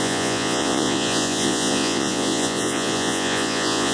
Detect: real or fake fake